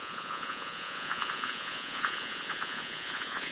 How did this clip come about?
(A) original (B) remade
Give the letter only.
B